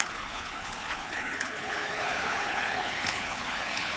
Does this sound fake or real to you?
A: fake